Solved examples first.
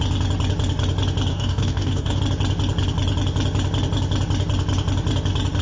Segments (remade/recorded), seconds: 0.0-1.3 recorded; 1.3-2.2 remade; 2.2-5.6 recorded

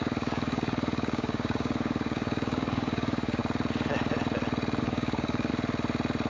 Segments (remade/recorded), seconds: 0.0-3.4 remade; 3.4-4.8 recorded; 4.8-5.5 remade; 5.5-6.3 recorded

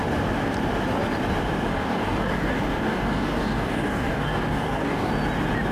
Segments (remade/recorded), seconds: 0.0-1.7 recorded; 1.7-5.1 remade; 5.1-5.7 recorded

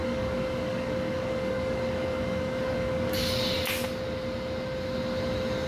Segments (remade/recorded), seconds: 0.0-3.4 remade; 3.4-5.7 recorded

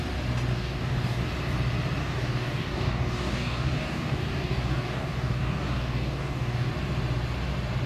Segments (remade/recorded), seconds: 0.0-0.5 recorded; 0.5-1.2 remade; 1.2-2.0 recorded; 2.0-6.7 remade; 6.7-7.9 recorded

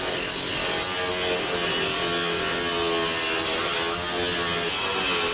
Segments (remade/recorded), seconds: 0.0-5.3 recorded